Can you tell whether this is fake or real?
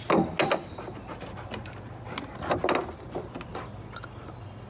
real